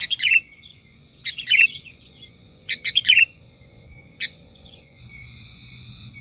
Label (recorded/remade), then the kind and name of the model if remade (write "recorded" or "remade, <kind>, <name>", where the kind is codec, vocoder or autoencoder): remade, vocoder, Vocos